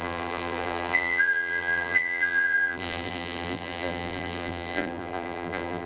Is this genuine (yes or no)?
no